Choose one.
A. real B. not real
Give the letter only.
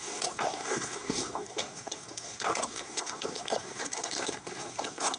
B